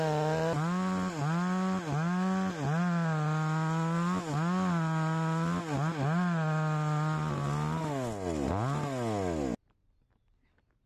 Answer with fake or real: real